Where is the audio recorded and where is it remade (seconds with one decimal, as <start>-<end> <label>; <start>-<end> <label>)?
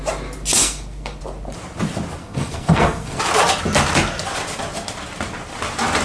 0.0-0.6 recorded; 0.6-1.2 remade; 1.2-2.2 recorded; 2.2-3.2 remade; 3.2-6.0 recorded